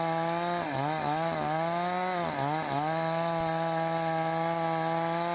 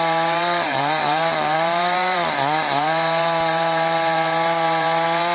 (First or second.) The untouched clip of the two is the first